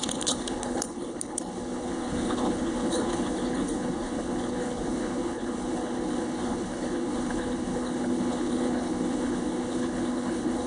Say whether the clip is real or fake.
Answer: fake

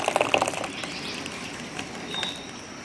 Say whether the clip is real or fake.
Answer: real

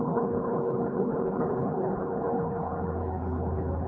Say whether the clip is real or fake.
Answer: fake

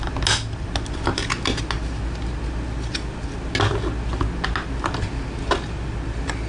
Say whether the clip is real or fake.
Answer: real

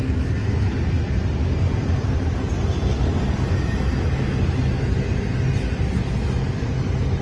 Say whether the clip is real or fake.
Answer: real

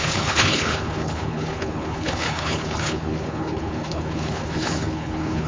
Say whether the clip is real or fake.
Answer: fake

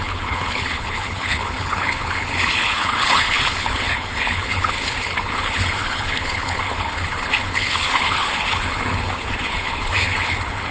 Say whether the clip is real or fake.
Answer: fake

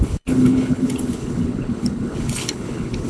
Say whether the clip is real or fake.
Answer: fake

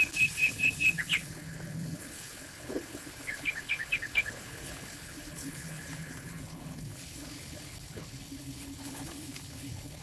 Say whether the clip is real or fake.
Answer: fake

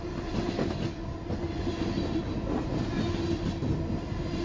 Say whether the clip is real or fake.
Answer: real